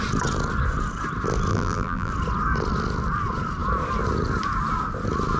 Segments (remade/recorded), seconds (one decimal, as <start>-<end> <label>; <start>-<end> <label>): 0.0-1.5 recorded; 1.5-2.1 remade; 2.1-5.4 recorded